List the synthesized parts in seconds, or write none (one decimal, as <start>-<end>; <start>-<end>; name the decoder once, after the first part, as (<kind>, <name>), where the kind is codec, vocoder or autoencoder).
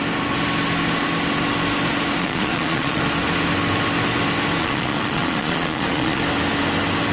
2.2-3.0 (vocoder, Vocos); 4.6-6.2